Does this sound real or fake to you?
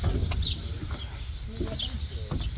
real